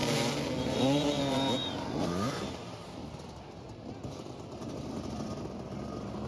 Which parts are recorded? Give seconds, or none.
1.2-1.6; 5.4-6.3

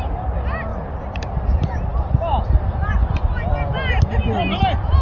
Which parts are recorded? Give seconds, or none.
0.0-0.7; 1.3-5.0

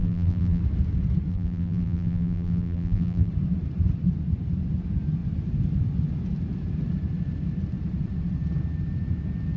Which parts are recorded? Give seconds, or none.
0.6-1.3; 3.3-9.6

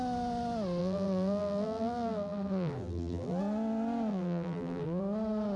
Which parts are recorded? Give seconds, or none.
0.0-0.8; 3.4-4.1; 5.0-5.6